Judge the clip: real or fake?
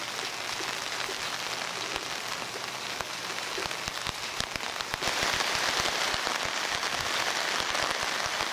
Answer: real